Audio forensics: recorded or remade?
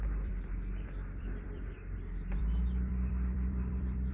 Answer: remade